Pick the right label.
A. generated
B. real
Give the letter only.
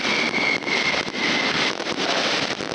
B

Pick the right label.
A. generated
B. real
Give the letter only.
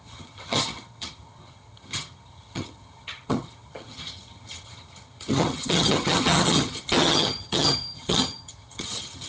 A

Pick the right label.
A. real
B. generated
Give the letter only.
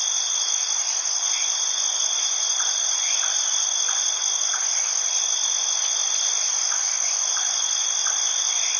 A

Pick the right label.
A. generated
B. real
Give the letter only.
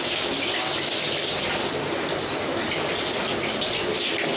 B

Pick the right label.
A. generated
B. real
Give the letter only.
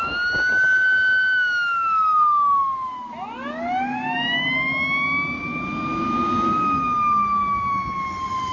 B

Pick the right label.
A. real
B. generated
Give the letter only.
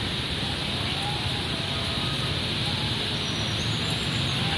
B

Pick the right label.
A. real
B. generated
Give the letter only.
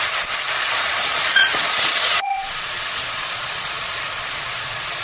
B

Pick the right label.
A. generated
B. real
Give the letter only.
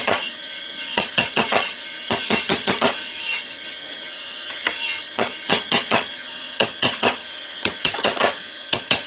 A